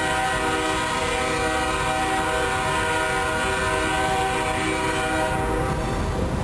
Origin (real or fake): real